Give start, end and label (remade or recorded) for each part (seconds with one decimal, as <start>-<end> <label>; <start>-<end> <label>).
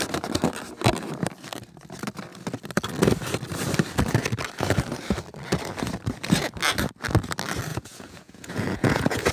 0.0-7.7 recorded; 7.7-9.3 remade